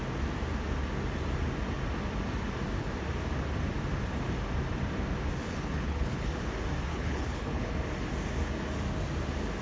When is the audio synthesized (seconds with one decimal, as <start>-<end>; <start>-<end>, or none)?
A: 5.4-6.4; 6.9-7.7

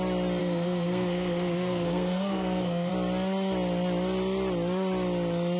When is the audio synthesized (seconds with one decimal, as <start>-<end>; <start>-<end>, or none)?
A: 0.4-2.9

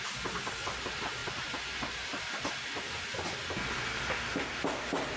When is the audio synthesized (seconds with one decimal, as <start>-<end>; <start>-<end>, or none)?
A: none

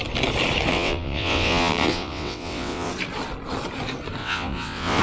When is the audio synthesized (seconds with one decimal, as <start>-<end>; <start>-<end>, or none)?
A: 0.7-2.9; 4.2-5.0

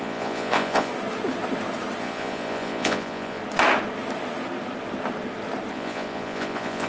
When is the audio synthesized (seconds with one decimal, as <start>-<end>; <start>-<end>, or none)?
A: 0.0-0.9; 2.0-3.4; 5.7-6.9